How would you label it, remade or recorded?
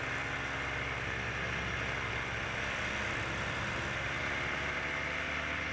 recorded